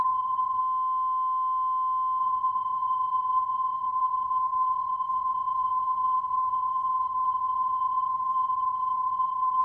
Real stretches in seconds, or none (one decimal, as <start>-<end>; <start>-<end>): 0.6-2.2